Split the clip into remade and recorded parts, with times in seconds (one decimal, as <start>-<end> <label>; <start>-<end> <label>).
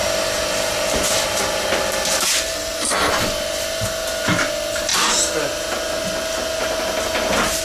0.0-2.5 recorded; 2.5-3.1 remade; 3.1-7.6 recorded